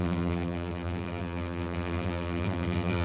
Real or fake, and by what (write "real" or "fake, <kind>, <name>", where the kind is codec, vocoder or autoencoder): fake, vocoder, BigVGAN v2